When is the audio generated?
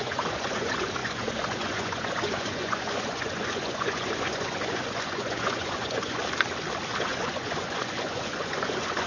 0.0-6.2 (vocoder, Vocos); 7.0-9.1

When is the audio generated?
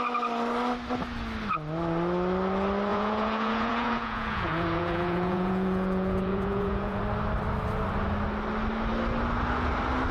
2.9-7.0 (vocoder, Vocos)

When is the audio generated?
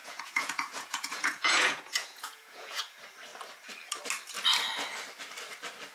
0.0-2.8 (vocoder, Vocos)